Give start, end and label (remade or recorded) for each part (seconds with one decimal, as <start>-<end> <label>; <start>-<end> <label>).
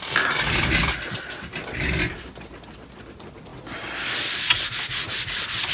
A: 0.0-5.7 recorded